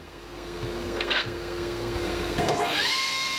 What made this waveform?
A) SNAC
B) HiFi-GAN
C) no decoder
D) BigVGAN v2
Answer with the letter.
A